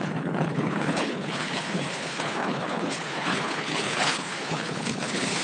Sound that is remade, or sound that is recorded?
remade